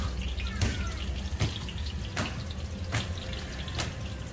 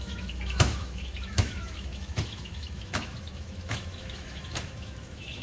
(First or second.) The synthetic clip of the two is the second